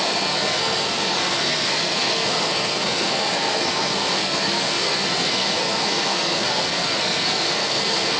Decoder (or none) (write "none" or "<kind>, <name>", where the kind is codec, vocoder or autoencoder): codec, SNAC